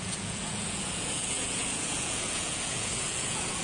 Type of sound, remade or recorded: remade